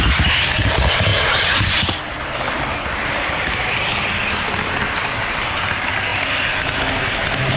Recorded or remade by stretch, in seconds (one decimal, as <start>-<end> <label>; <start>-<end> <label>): 0.0-7.6 recorded